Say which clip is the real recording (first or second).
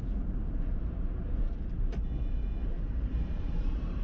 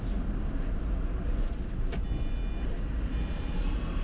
second